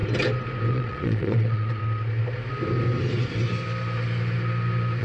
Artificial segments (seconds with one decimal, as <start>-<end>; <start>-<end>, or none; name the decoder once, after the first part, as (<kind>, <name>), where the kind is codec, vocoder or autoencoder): 0.7-1.8 (vocoder, Vocos)